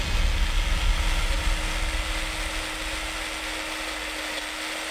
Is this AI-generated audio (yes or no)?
no